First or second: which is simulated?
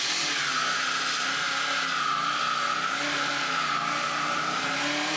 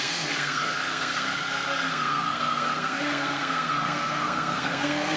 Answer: second